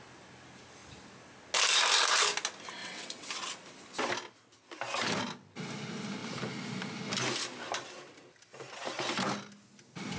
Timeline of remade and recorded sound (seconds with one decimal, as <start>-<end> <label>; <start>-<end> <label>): 0.0-2.8 recorded; 2.8-3.3 remade; 3.3-10.2 recorded